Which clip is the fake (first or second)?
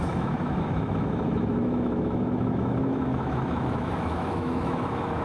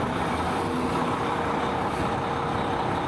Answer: first